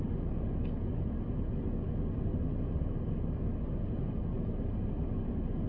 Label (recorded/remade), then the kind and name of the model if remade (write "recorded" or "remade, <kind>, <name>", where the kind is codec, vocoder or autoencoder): recorded